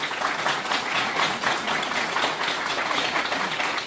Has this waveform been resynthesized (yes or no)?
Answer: yes